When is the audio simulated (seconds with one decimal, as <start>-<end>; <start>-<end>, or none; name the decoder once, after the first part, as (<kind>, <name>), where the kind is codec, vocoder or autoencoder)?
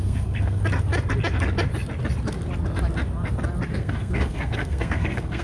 0.0-0.6 (codec, SNAC); 3.7-5.4